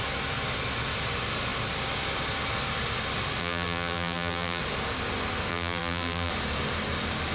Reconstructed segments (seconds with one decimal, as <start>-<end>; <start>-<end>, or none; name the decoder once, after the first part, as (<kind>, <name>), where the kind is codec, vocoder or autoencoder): 3.4-4.6 (vocoder, BigVGAN v2); 5.5-6.3